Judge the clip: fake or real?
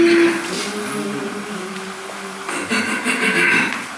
real